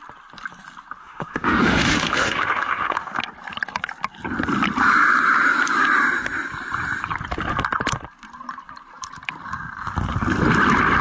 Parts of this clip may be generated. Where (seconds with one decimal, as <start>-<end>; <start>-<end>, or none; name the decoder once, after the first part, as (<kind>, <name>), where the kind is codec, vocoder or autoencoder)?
1.0-3.2 (autoencoder, DAC-VAE)